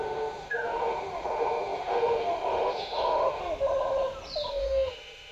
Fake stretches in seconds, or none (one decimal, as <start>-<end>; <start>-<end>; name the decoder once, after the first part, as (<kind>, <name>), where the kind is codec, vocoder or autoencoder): 0.0-3.4 (autoencoder, DAC-VAE); 4.5-5.3